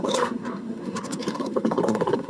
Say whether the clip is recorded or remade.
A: remade